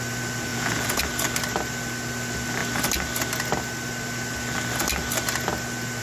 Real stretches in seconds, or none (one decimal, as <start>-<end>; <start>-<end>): 0.0-0.5; 1.0-6.0